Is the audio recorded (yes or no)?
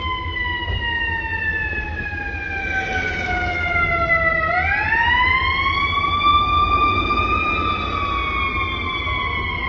yes